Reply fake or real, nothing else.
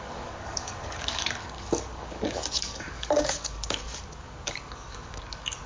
fake